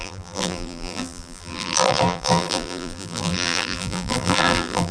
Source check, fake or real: fake